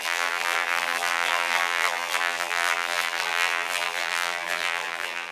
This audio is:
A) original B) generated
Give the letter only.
B